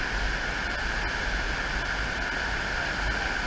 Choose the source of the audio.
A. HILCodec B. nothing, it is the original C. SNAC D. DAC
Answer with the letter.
B